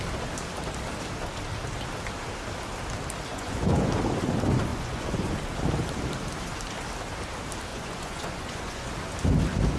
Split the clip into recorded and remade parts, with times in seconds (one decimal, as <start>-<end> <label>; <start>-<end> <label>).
0.0-3.3 recorded; 3.3-3.9 remade; 3.9-4.7 recorded; 4.7-5.3 remade; 5.3-7.7 recorded; 7.7-8.9 remade; 8.9-9.8 recorded